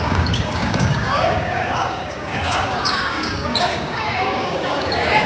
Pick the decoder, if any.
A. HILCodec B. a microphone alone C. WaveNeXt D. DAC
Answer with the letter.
D